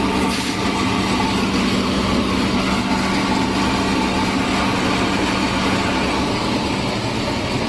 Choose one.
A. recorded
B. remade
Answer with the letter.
A